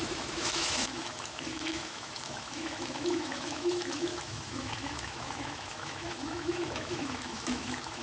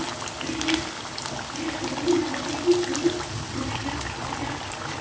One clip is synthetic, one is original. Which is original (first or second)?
second